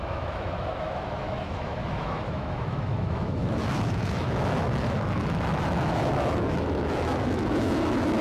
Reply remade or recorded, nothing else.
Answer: remade